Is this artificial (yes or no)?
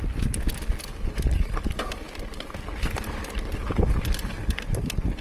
no